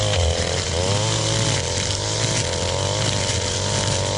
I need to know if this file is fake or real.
real